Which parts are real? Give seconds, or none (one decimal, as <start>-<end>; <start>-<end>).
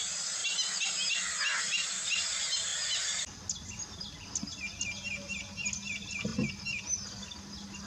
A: 0.0-7.9